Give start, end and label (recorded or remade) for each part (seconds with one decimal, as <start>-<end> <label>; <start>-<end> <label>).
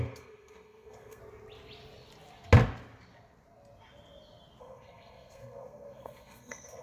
0.0-1.2 remade; 1.2-4.6 recorded; 4.6-6.8 remade